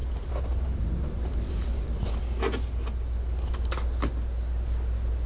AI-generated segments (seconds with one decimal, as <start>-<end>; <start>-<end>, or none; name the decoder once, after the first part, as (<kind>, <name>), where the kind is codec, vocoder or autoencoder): 0.0-2.2 (vocoder, BigVGAN v2)